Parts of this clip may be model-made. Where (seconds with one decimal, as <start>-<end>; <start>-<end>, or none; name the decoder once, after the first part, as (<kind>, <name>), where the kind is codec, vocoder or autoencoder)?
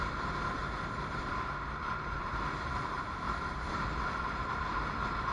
0.6-3.8 (vocoder, BigVGAN v2)